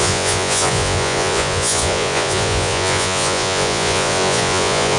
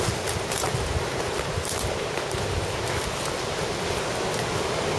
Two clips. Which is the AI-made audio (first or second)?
first